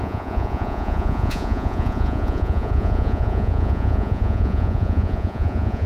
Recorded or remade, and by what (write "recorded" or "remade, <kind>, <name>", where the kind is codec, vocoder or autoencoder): remade, vocoder, Vocos